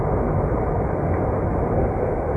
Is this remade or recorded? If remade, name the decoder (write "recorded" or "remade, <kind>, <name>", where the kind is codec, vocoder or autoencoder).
recorded